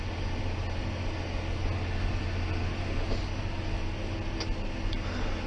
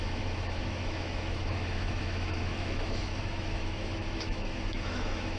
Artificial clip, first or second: second